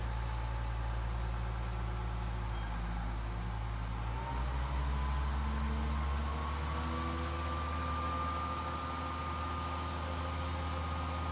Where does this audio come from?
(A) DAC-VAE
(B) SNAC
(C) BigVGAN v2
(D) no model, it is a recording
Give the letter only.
D